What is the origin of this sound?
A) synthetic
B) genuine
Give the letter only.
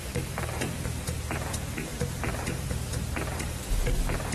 A